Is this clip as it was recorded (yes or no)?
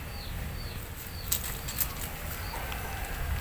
yes